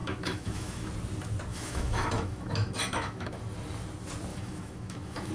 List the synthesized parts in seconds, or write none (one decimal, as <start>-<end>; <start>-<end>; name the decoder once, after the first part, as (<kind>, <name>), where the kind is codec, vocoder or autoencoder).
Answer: 0.0-0.9 (autoencoder, DAC-VAE); 1.5-3.4; 4.3-5.3

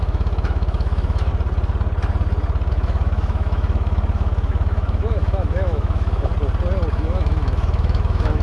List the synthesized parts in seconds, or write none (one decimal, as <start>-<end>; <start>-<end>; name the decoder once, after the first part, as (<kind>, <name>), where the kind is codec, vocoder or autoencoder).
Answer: 0.0-1.3 (autoencoder, DAC-VAE); 2.7-6.3; 6.9-8.4

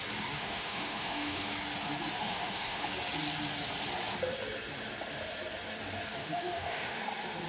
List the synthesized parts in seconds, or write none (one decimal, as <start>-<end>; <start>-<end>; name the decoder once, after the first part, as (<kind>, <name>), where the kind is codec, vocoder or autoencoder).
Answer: 0.4-1.5 (autoencoder, DAC-VAE); 2.2-2.9; 6.2-7.0

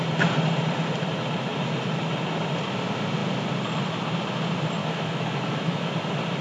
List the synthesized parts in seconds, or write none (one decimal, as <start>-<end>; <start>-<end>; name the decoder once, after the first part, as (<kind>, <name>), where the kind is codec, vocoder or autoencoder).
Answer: 4.8-5.9 (autoencoder, DAC-VAE)

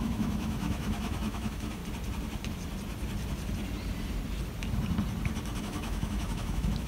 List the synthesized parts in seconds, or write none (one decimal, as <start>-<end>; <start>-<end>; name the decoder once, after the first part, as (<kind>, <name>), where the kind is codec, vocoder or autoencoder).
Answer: 0.0-1.8 (autoencoder, DAC-VAE); 5.6-6.9

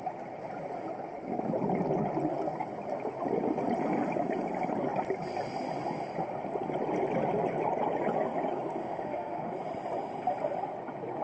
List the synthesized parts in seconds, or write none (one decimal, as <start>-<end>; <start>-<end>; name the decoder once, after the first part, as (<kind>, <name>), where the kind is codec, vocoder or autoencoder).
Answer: 8.8-9.5 (autoencoder, DAC-VAE)